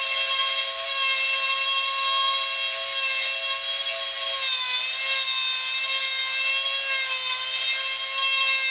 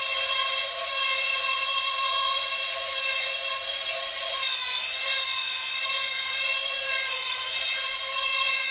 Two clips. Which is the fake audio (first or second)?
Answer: second